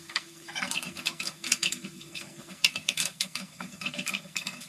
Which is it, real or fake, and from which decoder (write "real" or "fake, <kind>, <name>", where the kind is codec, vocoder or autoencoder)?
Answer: fake, codec, SNAC